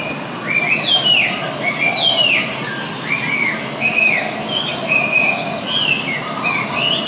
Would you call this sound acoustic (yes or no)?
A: yes